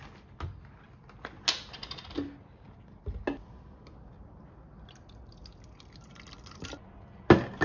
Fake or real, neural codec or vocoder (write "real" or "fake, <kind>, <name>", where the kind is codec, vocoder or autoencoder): real